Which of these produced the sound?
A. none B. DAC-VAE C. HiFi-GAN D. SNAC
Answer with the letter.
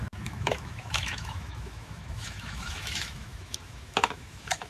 B